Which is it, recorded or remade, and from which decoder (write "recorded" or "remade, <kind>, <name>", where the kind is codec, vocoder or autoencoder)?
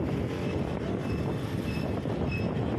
recorded